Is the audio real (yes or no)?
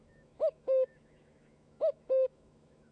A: no